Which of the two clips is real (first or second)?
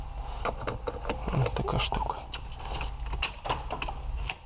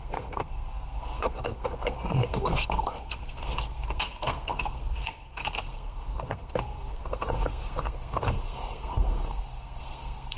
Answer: first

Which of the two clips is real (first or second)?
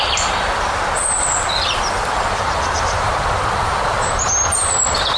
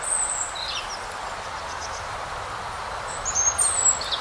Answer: second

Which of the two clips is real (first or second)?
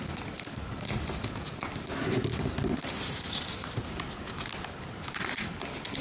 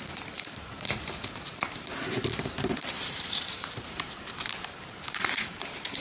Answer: first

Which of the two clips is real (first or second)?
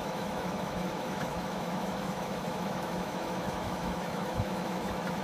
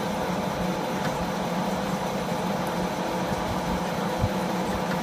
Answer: second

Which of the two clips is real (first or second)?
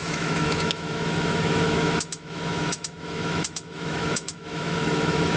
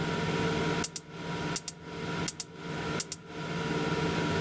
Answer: second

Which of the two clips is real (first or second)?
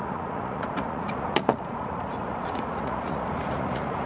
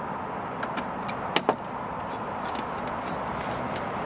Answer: second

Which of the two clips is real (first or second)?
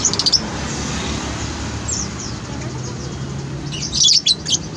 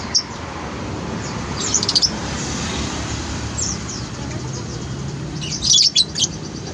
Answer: first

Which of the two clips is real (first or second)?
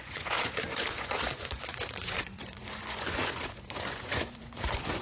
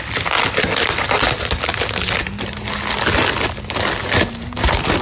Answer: second